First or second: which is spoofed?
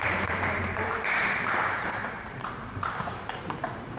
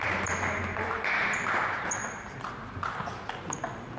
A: first